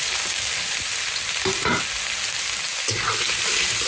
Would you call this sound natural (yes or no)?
yes